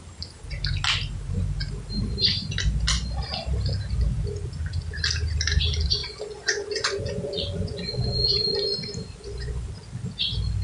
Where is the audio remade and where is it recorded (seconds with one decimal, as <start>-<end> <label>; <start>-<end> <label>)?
0.0-6.0 recorded; 6.0-9.7 remade; 9.7-10.6 recorded